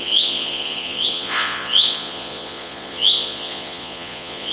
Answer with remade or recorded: remade